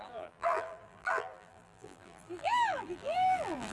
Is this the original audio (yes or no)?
no